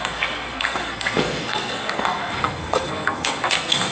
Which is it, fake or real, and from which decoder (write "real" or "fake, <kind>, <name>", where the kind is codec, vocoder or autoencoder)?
fake, codec, SNAC